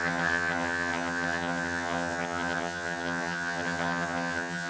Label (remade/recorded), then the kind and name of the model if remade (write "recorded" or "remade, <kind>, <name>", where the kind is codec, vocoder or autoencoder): remade, vocoder, HiFi-GAN